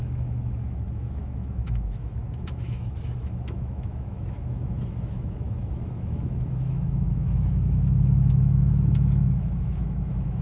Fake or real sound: fake